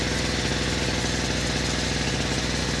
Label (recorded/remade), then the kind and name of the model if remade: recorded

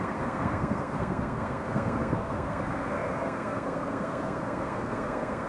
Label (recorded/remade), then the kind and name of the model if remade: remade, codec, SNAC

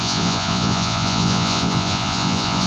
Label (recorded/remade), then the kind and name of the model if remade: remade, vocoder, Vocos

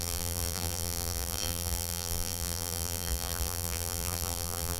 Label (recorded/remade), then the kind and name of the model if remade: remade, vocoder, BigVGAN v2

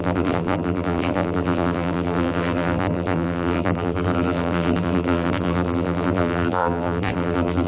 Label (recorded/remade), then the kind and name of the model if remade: remade, vocoder, BigVGAN v2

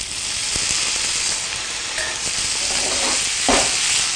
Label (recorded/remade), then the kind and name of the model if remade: recorded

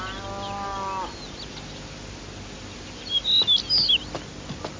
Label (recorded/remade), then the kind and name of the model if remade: recorded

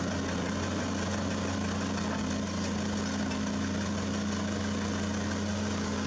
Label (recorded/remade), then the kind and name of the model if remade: recorded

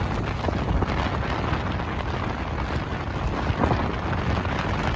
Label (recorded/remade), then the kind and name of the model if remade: recorded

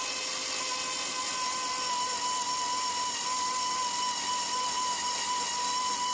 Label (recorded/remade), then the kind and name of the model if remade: recorded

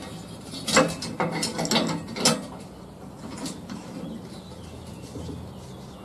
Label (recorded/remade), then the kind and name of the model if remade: recorded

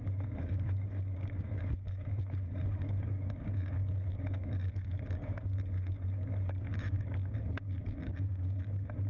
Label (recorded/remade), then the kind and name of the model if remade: remade, codec, DAC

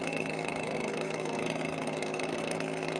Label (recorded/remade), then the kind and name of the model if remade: remade, codec, SNAC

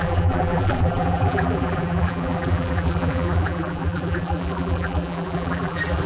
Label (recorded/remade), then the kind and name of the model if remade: remade, vocoder, BigVGAN v2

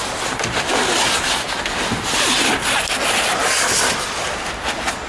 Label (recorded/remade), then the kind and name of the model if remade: recorded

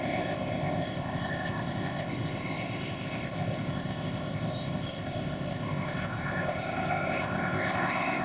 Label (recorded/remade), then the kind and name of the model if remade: remade, codec, ZipCodec